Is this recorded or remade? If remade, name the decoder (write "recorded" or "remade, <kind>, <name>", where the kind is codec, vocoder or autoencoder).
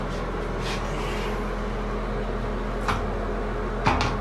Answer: recorded